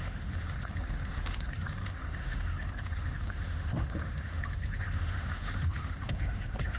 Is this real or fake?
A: fake